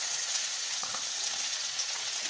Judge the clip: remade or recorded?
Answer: remade